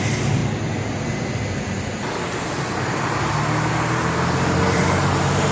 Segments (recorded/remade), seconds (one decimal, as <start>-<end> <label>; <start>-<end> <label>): 0.0-5.5 remade